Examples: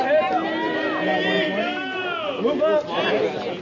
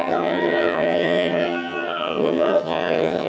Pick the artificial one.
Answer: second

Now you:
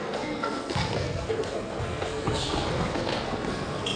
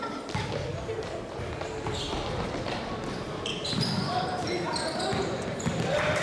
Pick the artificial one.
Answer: first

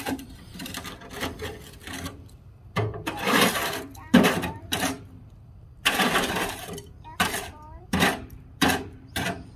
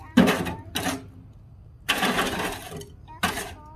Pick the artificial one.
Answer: first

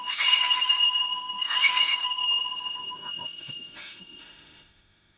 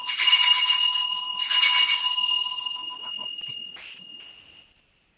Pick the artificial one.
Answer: first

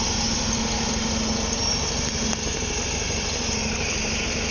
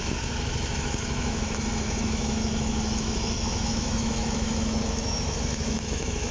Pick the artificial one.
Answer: second